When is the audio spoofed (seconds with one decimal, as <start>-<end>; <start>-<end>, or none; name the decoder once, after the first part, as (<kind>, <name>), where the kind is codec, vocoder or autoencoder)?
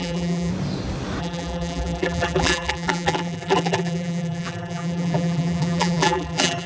0.0-0.5 (vocoder, BigVGAN v2); 1.2-6.7